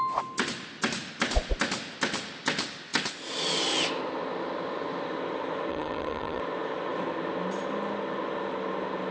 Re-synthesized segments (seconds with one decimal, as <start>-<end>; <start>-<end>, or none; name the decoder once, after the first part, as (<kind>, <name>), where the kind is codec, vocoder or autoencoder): 5.7-6.4 (vocoder, HiFi-GAN)